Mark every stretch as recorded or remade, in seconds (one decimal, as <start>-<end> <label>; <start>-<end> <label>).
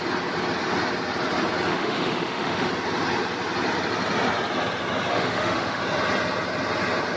0.0-1.7 recorded; 1.7-2.7 remade; 2.7-5.1 recorded; 5.1-5.8 remade; 5.8-7.2 recorded